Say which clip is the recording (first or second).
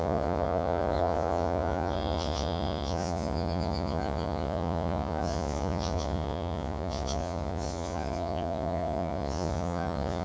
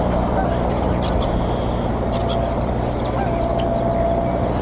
second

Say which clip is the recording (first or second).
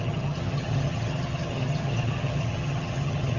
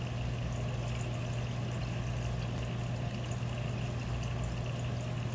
second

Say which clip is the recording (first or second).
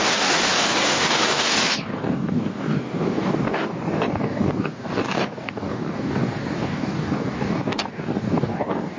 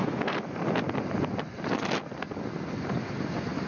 second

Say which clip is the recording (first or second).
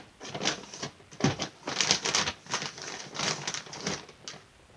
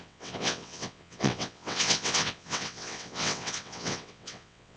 first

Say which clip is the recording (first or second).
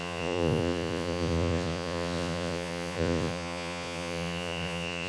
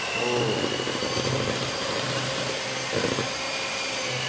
second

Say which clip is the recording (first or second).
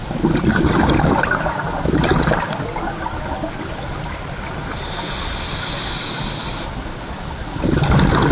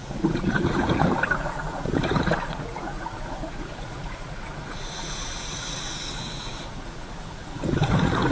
first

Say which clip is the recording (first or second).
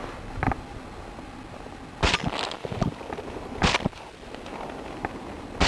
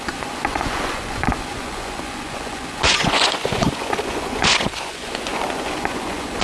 first